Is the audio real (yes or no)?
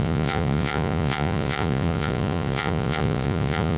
no